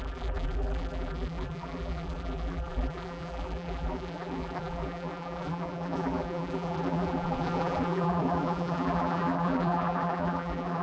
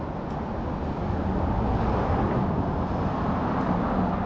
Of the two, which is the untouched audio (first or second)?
second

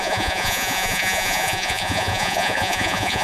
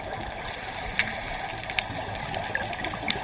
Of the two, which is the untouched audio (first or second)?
second